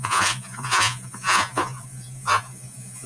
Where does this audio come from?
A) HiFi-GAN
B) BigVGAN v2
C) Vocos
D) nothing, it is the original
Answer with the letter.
C